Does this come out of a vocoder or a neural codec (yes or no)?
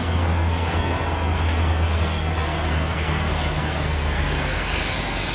yes